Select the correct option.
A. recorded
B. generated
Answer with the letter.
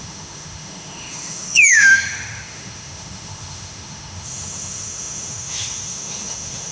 B